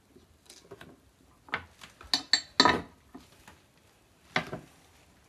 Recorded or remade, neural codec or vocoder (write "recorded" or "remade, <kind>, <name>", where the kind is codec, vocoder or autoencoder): recorded